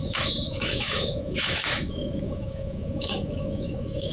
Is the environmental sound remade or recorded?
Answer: remade